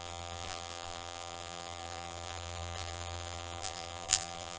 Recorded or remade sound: remade